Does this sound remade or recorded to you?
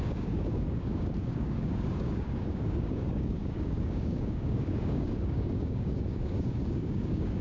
remade